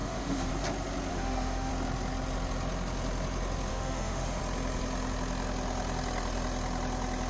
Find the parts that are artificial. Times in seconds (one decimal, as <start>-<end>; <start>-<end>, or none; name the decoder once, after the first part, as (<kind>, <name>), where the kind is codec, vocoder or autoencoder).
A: 0.0-0.5 (autoencoder, DAC-VAE); 1.1-1.7; 3.7-4.4